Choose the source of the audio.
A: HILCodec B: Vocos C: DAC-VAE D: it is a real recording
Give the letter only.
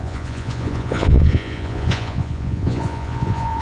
B